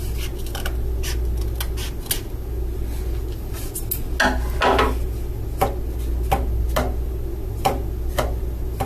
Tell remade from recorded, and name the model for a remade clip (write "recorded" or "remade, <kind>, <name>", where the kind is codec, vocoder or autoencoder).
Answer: recorded